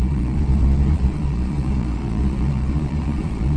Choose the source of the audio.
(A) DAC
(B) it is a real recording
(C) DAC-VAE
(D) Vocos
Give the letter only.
D